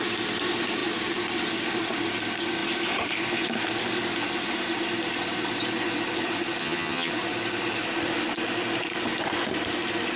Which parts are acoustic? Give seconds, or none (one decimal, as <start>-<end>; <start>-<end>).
0.0-6.6; 7.1-10.2